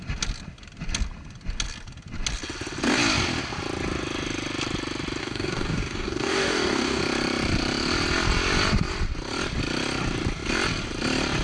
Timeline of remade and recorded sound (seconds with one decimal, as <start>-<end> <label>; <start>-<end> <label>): 0.0-5.2 recorded; 5.2-7.0 remade; 7.0-11.4 recorded